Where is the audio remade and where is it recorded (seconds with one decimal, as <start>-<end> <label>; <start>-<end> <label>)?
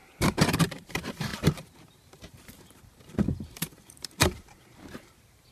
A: 0.0-5.5 remade